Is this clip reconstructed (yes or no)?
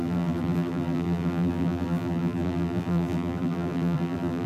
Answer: yes